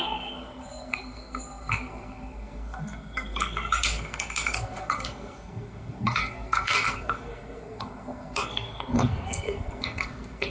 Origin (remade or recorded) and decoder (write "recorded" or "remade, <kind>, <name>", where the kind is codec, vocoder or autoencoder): remade, codec, SNAC